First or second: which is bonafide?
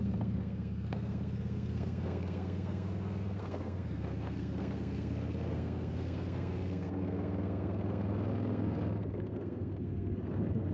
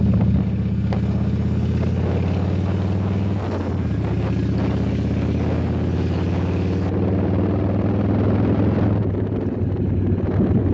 second